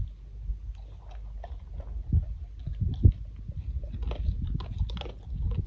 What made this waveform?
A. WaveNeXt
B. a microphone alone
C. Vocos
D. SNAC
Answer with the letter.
B